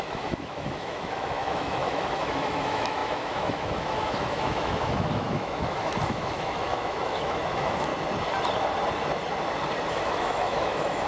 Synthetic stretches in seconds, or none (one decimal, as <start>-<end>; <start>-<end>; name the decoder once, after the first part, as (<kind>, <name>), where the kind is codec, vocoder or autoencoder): 0.0-7.9 (autoencoder, DAC-VAE); 9.9-11.1

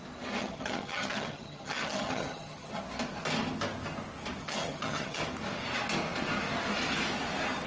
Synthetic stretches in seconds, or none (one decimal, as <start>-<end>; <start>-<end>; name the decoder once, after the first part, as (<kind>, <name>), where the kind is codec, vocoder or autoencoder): 0.4-2.8 (vocoder, HiFi-GAN); 4.4-5.2

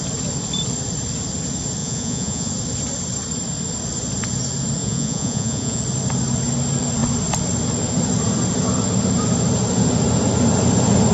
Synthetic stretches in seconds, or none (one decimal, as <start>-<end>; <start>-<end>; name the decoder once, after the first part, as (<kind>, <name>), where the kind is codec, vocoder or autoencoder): 1.8-2.5 (vocoder, Vocos); 4.8-5.8